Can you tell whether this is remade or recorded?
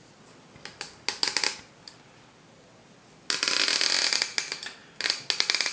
recorded